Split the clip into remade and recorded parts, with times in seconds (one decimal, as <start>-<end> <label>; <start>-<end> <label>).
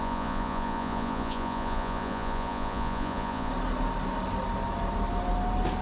0.0-3.5 remade; 3.5-5.8 recorded